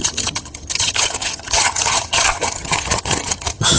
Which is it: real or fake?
fake